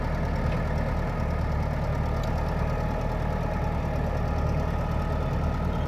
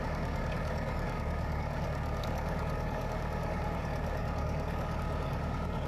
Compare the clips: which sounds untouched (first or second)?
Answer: first